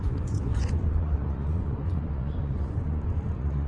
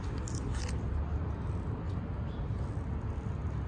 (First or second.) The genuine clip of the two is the second